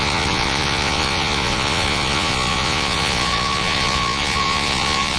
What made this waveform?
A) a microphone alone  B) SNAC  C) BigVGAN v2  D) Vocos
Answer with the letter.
D